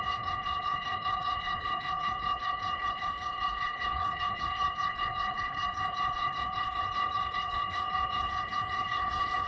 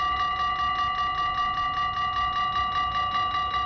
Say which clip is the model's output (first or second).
first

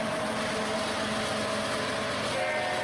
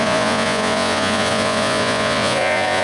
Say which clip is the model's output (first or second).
second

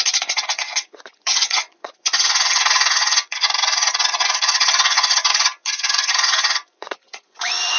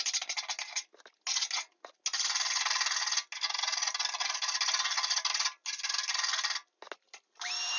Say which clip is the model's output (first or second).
first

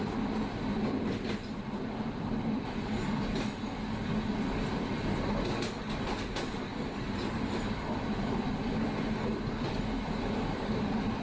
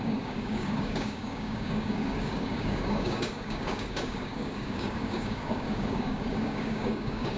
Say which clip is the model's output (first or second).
second